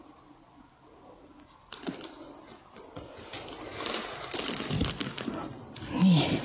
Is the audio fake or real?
real